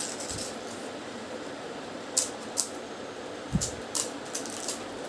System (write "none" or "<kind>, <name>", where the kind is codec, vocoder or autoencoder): none